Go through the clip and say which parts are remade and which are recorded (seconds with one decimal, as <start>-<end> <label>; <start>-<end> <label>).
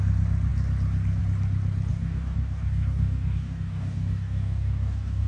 0.0-1.9 recorded; 1.9-5.3 remade